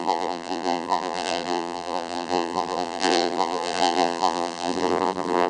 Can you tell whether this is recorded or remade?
remade